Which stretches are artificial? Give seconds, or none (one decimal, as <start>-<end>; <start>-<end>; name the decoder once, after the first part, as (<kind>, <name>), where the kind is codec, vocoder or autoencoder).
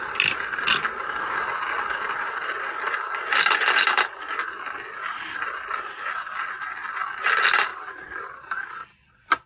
7.7-8.6 (vocoder, BigVGAN v2)